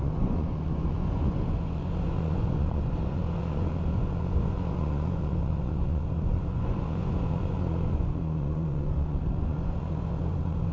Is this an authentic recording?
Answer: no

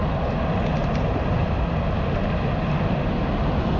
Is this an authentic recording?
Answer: yes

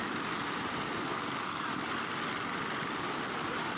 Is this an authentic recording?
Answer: yes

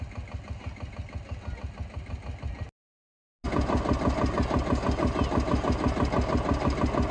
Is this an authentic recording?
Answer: yes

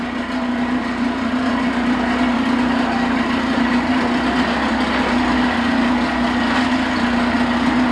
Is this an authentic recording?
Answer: yes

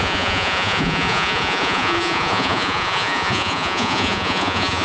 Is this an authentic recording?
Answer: no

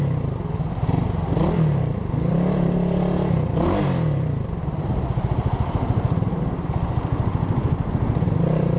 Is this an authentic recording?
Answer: yes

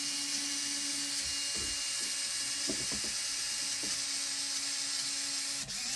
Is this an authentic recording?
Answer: yes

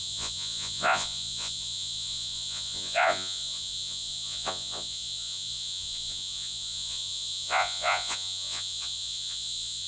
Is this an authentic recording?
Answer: no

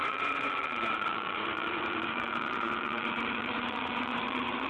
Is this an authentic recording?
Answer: no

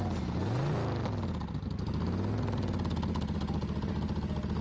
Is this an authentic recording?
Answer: yes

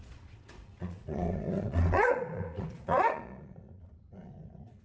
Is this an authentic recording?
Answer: no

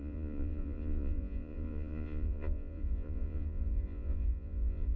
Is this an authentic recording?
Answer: no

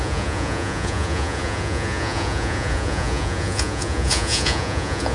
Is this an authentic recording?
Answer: no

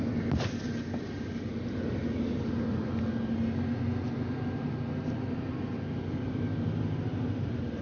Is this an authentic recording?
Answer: yes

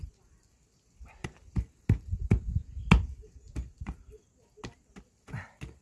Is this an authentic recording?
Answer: yes